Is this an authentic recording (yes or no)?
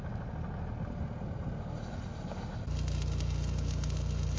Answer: yes